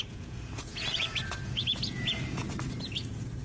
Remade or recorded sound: remade